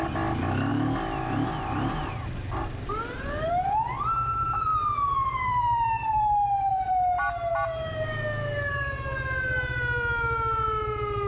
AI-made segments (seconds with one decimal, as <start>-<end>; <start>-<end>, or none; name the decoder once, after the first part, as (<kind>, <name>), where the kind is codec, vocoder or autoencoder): none